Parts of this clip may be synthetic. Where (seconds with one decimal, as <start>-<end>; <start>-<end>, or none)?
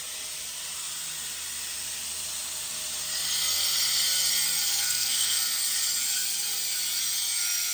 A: 4.7-5.4